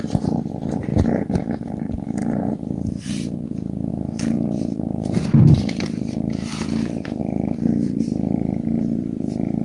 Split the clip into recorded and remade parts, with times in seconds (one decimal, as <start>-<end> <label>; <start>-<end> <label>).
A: 0.0-0.9 remade; 0.9-1.4 recorded; 1.4-9.6 remade